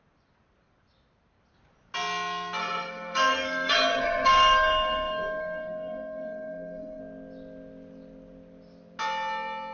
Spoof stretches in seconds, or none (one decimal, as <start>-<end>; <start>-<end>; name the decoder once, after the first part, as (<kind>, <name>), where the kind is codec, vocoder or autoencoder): 2.6-7.0 (codec, SNAC)